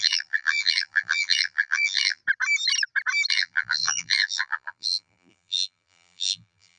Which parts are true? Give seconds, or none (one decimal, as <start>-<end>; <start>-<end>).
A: 2.2-3.3